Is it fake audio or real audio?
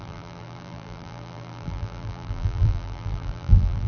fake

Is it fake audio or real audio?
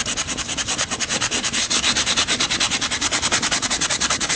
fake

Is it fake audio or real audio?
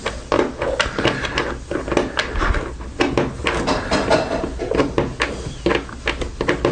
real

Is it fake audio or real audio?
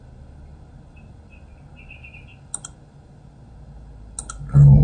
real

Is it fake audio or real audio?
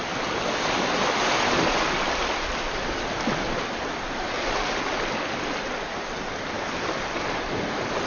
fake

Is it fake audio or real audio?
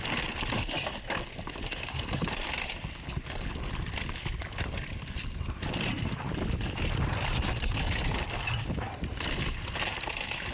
real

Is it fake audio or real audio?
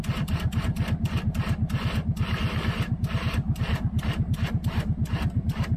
fake